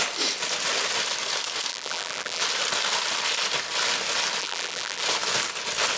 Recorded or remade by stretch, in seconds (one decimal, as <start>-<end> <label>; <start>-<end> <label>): 0.0-1.7 recorded; 1.7-2.4 remade; 2.4-4.4 recorded; 4.4-5.0 remade; 5.0-6.0 recorded